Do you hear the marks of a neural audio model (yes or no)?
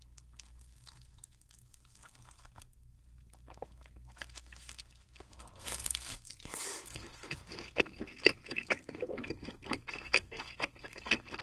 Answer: yes